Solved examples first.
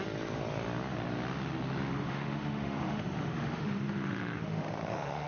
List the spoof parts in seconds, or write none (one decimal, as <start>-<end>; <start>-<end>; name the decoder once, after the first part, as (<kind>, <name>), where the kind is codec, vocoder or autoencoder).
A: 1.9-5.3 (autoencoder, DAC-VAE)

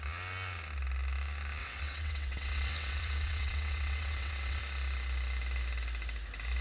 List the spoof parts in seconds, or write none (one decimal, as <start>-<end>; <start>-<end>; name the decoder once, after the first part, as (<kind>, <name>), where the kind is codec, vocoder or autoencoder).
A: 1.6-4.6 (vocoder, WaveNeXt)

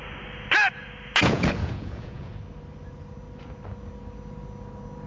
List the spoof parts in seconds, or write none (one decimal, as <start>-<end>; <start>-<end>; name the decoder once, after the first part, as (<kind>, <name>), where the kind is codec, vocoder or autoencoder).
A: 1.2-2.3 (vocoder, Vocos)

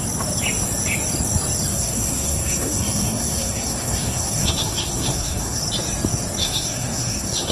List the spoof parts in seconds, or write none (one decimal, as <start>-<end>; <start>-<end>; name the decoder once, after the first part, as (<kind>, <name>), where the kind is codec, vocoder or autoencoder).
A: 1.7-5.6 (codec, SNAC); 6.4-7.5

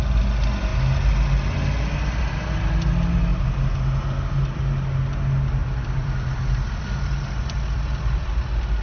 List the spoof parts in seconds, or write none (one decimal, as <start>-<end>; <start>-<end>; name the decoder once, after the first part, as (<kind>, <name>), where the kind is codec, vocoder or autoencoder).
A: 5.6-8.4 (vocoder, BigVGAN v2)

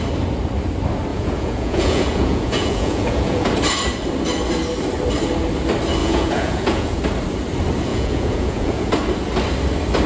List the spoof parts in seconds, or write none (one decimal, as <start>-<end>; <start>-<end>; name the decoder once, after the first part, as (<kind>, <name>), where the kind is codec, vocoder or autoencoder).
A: 1.1-3.5 (vocoder, Vocos); 6.0-7.0; 7.9-8.9